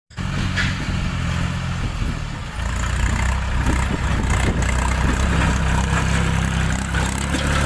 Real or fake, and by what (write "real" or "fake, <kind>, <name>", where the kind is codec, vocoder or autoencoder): real